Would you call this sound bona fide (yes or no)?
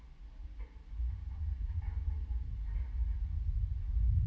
yes